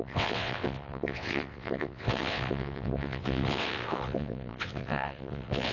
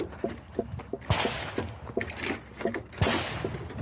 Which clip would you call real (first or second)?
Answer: second